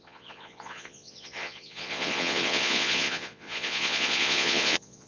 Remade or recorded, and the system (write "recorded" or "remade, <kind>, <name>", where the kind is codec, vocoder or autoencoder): remade, vocoder, Vocos